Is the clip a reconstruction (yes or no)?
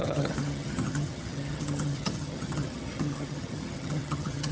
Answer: yes